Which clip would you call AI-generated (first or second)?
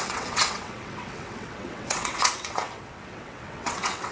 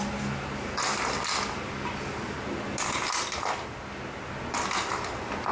first